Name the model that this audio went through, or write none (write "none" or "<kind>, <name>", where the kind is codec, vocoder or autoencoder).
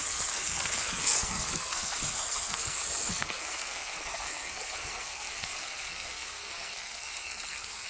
codec, SNAC